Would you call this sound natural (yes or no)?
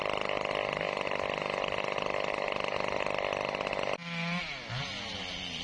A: yes